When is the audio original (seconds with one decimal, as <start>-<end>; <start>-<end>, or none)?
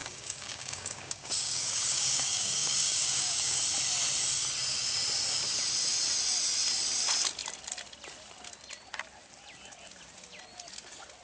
3.6-11.2